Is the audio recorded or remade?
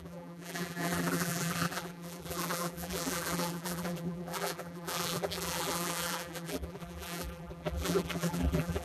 remade